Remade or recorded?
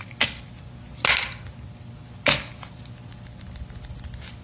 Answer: recorded